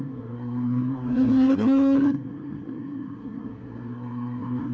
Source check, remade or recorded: remade